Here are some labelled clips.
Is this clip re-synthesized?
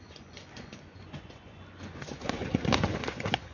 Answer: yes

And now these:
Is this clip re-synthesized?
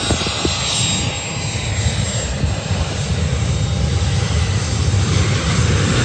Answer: no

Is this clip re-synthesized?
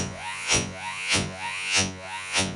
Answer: yes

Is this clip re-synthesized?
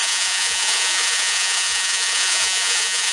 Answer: yes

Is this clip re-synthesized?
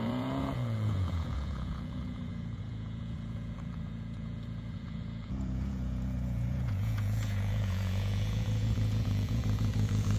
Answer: yes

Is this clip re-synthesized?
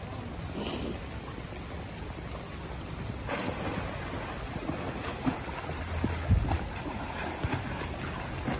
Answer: no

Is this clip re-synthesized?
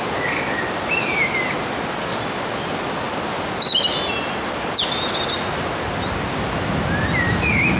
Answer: no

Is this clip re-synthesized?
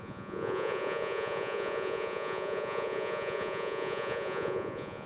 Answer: yes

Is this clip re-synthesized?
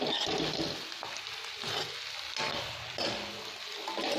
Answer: no